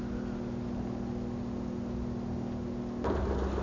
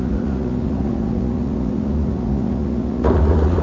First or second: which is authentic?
first